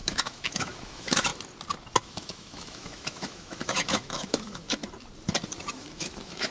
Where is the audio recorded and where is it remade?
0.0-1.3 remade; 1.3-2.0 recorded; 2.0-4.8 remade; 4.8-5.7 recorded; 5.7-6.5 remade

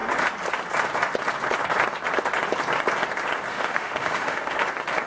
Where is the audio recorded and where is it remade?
0.0-3.5 recorded; 3.5-4.5 remade; 4.5-5.1 recorded